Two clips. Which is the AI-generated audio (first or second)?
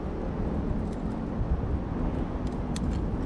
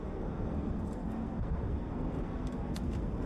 second